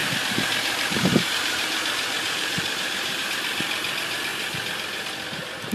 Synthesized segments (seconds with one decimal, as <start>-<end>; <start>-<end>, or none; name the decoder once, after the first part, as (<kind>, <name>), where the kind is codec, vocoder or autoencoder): 0.0-3.3 (vocoder, BigVGAN v2)